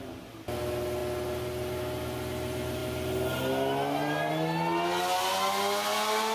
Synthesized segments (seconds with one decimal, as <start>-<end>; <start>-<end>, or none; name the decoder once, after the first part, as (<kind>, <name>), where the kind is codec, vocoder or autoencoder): none